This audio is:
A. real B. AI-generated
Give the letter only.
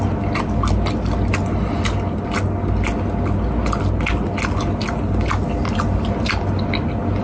A